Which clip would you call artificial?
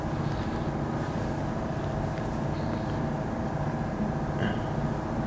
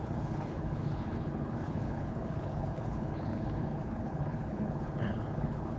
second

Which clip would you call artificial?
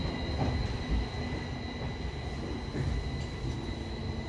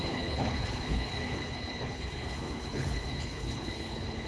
second